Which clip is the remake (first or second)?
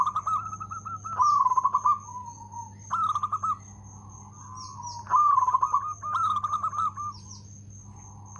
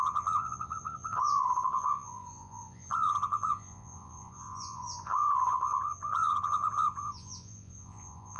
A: second